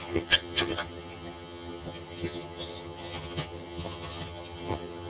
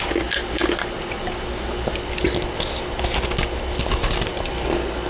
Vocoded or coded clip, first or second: first